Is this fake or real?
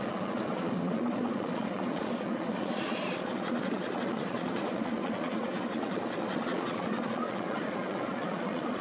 fake